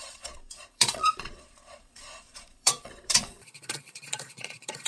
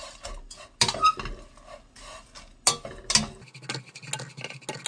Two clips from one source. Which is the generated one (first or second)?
first